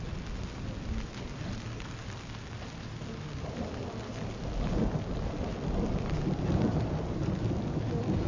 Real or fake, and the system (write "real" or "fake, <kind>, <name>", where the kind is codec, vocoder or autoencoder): real